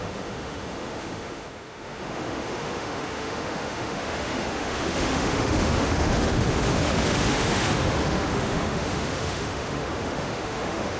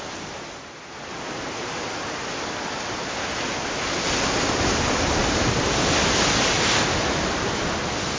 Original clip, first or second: second